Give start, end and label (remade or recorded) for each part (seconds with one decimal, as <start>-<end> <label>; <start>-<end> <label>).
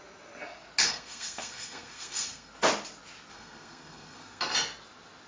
0.0-0.8 recorded; 0.8-2.5 remade; 2.5-3.3 recorded; 3.3-4.4 remade; 4.4-5.3 recorded